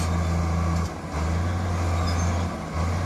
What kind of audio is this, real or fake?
real